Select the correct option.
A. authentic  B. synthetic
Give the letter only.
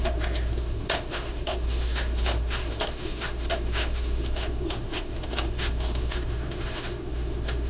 B